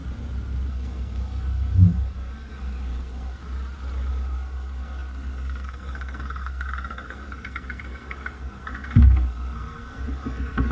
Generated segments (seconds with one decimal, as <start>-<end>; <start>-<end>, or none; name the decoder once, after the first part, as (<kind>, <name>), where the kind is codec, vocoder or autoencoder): 0.7-3.4 (codec, SNAC); 4.1-10.7